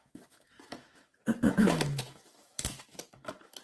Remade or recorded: remade